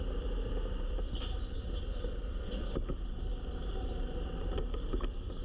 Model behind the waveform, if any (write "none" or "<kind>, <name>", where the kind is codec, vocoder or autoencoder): none